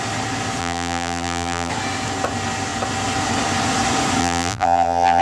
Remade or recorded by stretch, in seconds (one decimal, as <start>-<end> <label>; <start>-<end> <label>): 0.0-0.6 recorded; 0.6-1.7 remade; 1.7-4.2 recorded; 4.2-5.2 remade